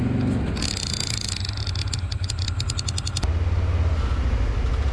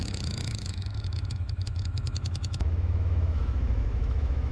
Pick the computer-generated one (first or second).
second